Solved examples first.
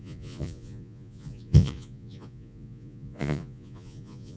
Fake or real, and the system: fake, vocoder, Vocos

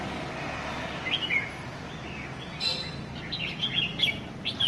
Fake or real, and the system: real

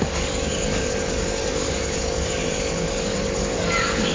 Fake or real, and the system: fake, codec, DAC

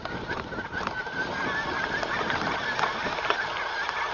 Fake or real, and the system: real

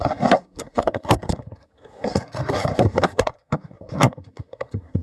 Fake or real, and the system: fake, codec, SNAC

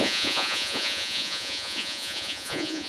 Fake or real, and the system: fake, vocoder, Vocos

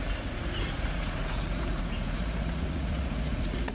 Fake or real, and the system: fake, vocoder, Vocos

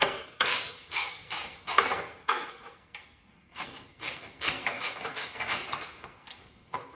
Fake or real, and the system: fake, codec, SNAC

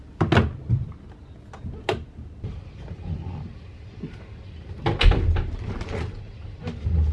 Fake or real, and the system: real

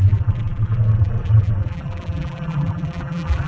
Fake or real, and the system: fake, vocoder, BigVGAN v2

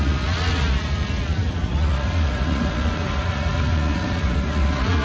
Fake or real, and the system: fake, vocoder, Vocos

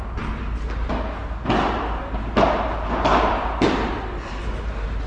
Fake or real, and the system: real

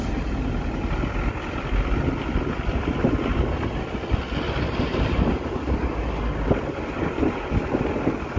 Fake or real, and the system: real